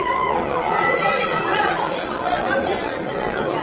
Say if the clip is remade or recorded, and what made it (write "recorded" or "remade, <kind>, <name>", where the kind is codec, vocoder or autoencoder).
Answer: remade, vocoder, Vocos